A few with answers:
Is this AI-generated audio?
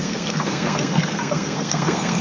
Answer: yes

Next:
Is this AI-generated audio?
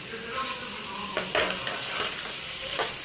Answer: no